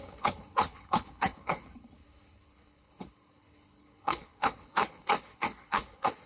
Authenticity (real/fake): fake